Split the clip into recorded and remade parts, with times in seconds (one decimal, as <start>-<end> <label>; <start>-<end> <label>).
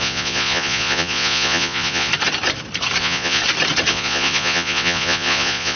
0.0-2.1 remade; 2.1-3.0 recorded; 3.0-3.4 remade; 3.4-3.9 recorded; 3.9-5.8 remade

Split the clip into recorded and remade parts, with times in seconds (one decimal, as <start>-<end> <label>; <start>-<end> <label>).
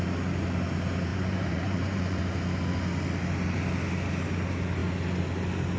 0.0-1.1 recorded; 1.1-2.2 remade; 2.2-5.8 recorded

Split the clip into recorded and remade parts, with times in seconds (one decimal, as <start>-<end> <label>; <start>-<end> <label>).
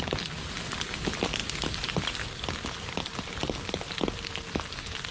0.0-5.1 recorded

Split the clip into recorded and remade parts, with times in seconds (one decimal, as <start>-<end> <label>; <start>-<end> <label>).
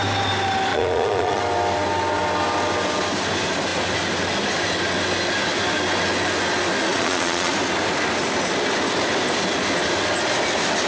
0.0-0.7 recorded; 0.7-1.4 remade; 1.4-6.9 recorded; 6.9-7.5 remade; 7.5-10.9 recorded